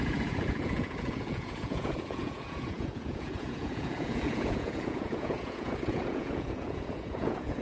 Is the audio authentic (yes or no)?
no